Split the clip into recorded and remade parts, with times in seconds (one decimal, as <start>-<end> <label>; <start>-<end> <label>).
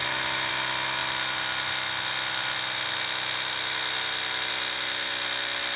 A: 0.0-5.8 recorded